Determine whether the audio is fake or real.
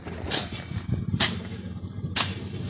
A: real